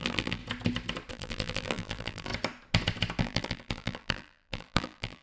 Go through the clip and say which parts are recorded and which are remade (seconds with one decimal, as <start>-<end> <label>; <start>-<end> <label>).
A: 0.0-0.4 remade; 0.4-1.1 recorded; 1.1-2.3 remade; 2.3-3.2 recorded; 3.2-5.2 remade